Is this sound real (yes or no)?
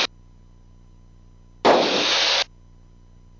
yes